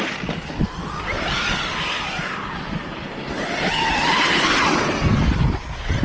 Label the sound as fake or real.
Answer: real